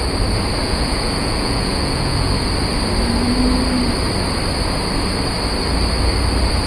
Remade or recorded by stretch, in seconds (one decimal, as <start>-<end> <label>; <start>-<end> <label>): 0.0-0.6 recorded; 0.6-2.3 remade; 2.3-6.7 recorded